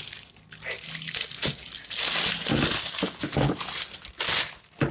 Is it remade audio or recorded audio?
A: recorded